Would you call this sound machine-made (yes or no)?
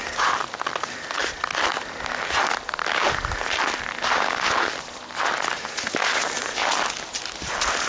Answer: no